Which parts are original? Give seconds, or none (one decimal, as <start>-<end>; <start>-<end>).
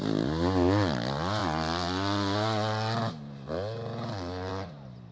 0.0-5.1